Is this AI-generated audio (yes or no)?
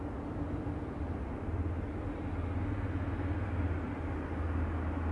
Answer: no